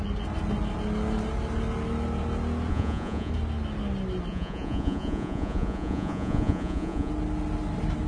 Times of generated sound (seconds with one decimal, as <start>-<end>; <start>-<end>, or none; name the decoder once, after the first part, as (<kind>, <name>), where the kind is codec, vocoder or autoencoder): 2.7-3.3 (vocoder, Vocos); 4.3-7.1